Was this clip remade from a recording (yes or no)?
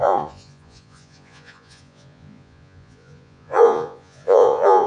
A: yes